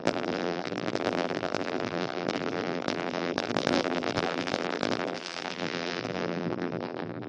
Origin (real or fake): fake